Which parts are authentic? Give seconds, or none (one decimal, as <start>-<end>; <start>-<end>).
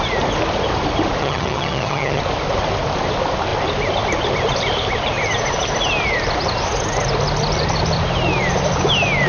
0.0-1.2; 2.2-9.3